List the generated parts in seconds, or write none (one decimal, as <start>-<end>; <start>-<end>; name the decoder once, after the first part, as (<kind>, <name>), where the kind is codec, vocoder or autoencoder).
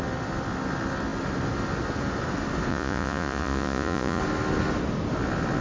2.7-4.2 (vocoder, Vocos)